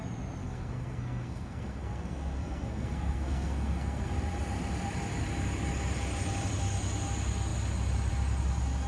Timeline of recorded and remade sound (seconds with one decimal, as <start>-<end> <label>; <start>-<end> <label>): 0.0-0.4 recorded; 0.4-4.1 remade; 4.1-8.9 recorded